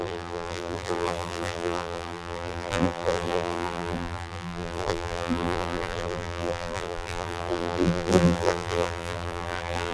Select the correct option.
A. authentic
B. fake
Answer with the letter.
B